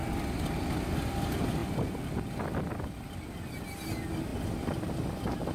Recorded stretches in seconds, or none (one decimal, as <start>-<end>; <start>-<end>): 0.0-1.6; 3.3-4.3; 5.0-5.5

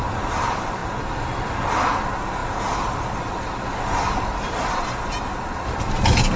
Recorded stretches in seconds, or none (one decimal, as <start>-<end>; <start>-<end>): 0.0-0.8; 1.5-2.4; 5.8-6.4

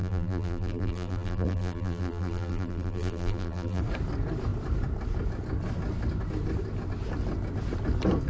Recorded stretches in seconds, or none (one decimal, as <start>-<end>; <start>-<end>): 3.8-8.3

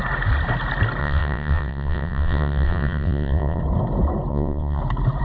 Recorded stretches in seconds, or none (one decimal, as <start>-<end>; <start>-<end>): 0.0-1.0; 3.6-4.3; 4.8-5.2

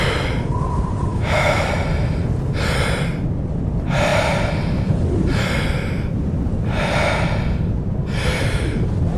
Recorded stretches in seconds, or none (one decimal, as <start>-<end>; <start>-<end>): 0.0-1.1; 1.7-9.2